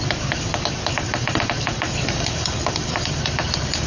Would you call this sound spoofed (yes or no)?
no